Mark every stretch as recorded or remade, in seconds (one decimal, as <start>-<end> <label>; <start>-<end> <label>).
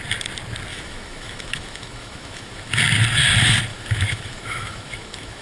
0.0-0.7 recorded; 0.7-2.7 remade; 2.7-3.7 recorded; 3.7-5.4 remade